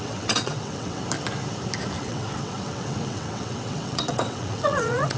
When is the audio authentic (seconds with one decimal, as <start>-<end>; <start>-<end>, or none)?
1.0-2.0